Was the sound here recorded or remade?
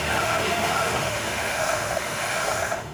remade